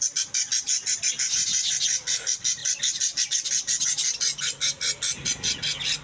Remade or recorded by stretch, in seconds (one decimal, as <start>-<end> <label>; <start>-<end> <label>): 0.0-6.0 recorded